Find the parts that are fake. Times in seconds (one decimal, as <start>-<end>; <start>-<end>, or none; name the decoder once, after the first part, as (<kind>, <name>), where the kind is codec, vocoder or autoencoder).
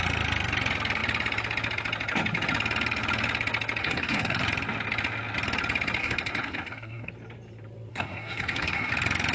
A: 3.8-4.4 (codec, SNAC); 6.0-7.1; 7.9-8.9